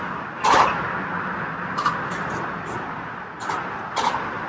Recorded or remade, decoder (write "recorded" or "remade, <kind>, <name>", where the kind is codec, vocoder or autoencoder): recorded